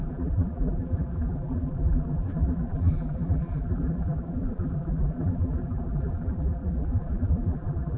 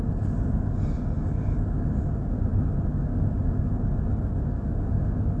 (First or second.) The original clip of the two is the second